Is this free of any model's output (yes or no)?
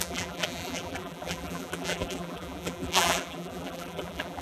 no